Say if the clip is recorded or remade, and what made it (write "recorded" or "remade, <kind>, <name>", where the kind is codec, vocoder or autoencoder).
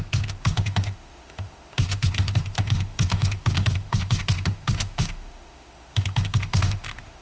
remade, autoencoder, DAC-VAE